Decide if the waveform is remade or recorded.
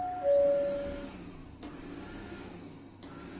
recorded